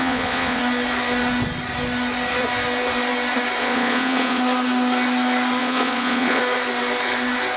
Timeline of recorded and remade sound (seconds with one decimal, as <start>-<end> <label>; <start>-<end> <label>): 0.0-0.6 remade; 0.6-3.6 recorded; 3.6-4.4 remade; 4.4-5.6 recorded; 5.6-6.4 remade; 6.4-7.6 recorded